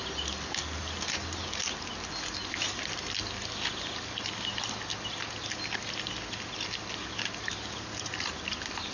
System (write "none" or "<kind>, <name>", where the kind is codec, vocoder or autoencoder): none